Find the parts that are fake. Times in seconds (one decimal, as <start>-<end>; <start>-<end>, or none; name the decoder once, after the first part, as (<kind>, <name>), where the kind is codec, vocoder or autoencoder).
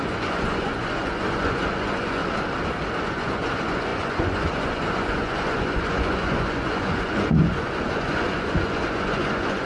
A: 0.0-2.2 (vocoder, Vocos); 3.0-9.7